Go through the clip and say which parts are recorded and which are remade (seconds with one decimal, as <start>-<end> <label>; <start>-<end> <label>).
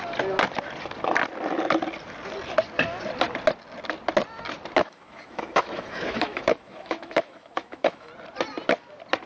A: 0.0-4.8 recorded; 4.8-8.1 remade; 8.1-9.3 recorded